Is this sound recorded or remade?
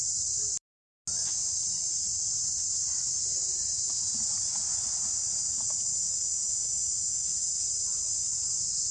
recorded